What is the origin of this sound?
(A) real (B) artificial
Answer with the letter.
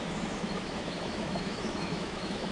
B